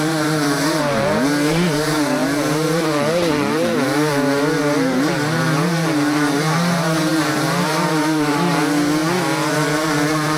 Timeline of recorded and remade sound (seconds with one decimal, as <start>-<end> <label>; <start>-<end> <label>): 0.0-9.0 remade; 9.0-9.5 recorded; 9.5-10.4 remade